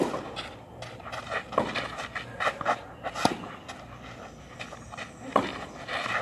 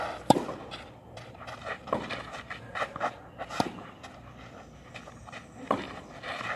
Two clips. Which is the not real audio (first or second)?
second